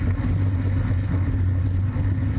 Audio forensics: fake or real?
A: real